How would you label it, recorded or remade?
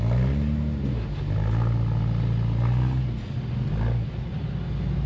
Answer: recorded